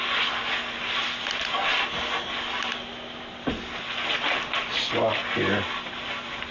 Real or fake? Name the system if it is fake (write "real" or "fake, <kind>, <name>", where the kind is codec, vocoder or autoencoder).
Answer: real